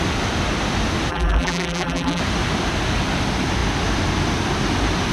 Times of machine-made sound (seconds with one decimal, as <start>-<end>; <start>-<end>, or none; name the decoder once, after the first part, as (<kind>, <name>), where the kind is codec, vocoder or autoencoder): 1.1-2.2 (vocoder, BigVGAN v2)